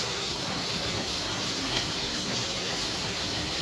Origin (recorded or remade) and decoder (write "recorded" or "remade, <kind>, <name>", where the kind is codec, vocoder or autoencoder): remade, codec, SNAC